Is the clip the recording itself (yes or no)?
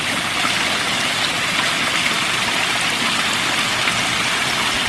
yes